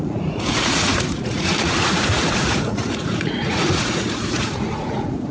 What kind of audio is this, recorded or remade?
remade